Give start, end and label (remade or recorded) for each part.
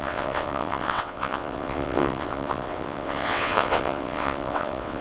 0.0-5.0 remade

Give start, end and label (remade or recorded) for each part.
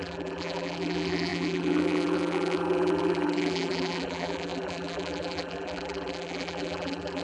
0.0-7.2 remade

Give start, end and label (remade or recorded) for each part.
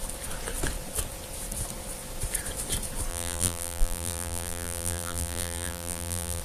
0.0-3.1 recorded; 3.1-6.4 remade